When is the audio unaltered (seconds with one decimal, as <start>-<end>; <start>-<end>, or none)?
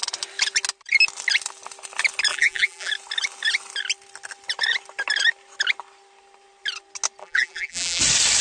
0.0-2.3; 2.9-7.2; 8.0-8.4